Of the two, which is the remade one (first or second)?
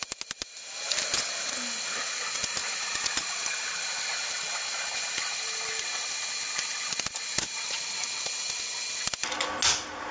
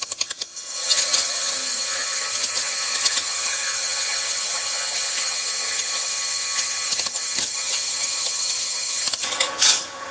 second